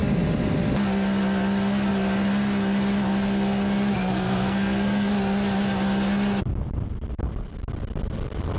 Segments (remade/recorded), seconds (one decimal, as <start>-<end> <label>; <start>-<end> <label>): 0.0-4.0 recorded; 4.0-5.1 remade; 5.1-8.6 recorded